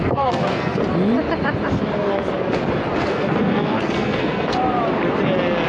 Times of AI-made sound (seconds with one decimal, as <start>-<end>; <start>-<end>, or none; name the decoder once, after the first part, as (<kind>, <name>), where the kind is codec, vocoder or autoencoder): 0.0-0.8 (codec, SNAC); 3.0-4.6